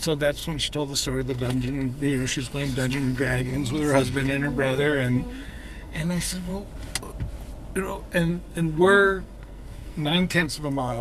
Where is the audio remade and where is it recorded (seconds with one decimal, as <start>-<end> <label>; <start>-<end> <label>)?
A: 0.0-3.5 remade; 3.5-4.0 recorded; 4.0-6.5 remade; 6.5-8.3 recorded; 8.3-11.0 remade